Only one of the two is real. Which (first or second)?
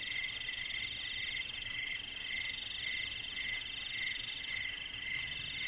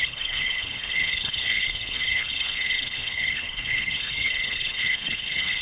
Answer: first